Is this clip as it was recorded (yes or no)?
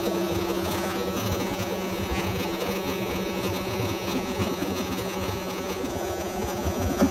no